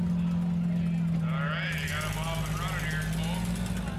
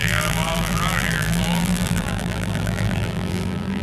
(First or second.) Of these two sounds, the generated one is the second